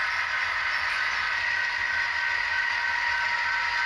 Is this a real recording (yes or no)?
yes